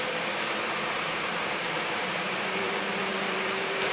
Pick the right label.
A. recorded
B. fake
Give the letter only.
B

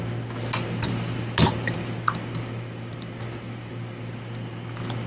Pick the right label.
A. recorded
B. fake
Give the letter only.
A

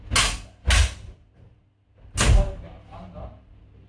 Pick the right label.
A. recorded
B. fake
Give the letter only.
A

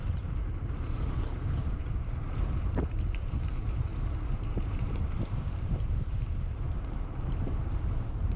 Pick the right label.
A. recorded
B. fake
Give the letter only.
B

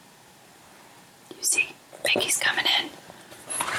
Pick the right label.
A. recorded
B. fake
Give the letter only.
B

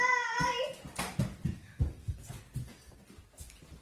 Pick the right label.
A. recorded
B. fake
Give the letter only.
A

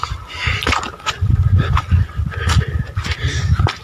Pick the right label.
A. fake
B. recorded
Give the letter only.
B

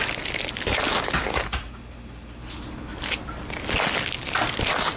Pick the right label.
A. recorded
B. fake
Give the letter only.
A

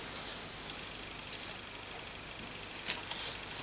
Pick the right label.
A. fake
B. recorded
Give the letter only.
B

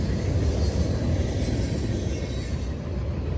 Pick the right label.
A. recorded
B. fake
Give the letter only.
A